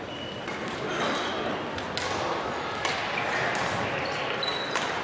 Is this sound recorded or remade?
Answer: recorded